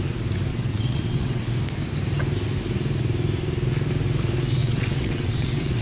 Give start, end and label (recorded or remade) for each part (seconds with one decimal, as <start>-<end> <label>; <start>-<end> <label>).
0.0-0.5 recorded; 0.5-1.4 remade; 1.4-4.6 recorded; 4.6-5.8 remade

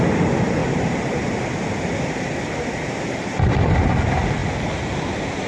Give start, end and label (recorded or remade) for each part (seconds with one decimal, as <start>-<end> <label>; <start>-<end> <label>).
0.0-5.5 recorded

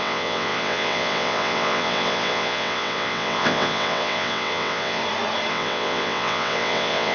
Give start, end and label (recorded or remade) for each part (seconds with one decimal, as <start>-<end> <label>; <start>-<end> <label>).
0.0-5.0 remade; 5.0-5.5 recorded; 5.5-7.1 remade

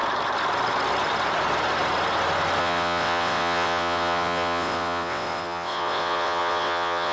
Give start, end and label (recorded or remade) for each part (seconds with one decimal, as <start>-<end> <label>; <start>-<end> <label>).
0.0-2.6 recorded; 2.6-7.1 remade